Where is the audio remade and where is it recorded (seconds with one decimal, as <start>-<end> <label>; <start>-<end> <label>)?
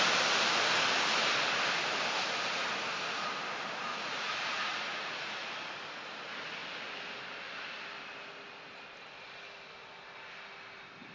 0.0-3.9 recorded; 3.9-5.3 remade; 5.3-11.1 recorded